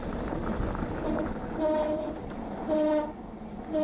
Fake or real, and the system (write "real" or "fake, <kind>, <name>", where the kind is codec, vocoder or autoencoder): real